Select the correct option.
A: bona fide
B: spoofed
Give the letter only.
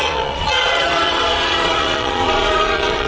B